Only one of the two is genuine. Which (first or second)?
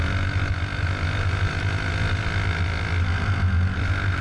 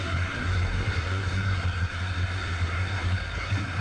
first